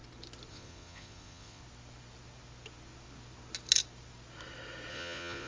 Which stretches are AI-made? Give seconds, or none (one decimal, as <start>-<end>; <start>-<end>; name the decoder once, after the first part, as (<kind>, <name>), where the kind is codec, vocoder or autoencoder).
0.5-1.6 (vocoder, Vocos); 4.9-5.5